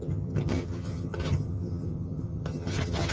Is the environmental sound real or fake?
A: fake